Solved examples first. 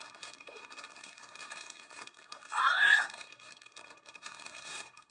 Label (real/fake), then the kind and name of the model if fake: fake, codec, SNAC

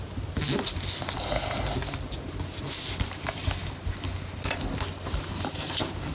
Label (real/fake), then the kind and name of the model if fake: real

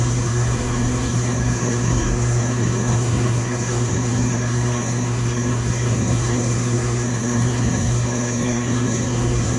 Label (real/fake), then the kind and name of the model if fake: fake, codec, SNAC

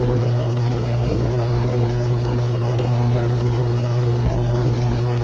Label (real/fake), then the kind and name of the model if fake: fake, codec, SNAC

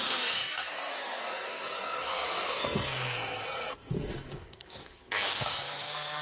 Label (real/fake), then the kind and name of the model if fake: fake, codec, SNAC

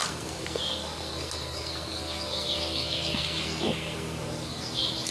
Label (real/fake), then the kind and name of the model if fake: fake, codec, SNAC